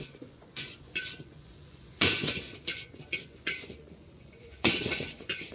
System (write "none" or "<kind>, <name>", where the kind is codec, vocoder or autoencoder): vocoder, Vocos